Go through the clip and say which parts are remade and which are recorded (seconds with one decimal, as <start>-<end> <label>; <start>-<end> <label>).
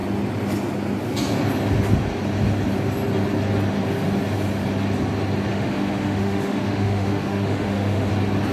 0.0-5.5 recorded; 5.5-8.1 remade; 8.1-8.5 recorded